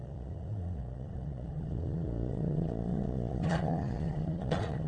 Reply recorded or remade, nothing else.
remade